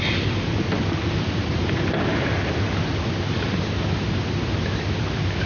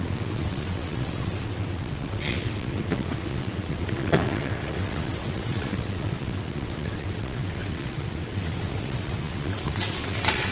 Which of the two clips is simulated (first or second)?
second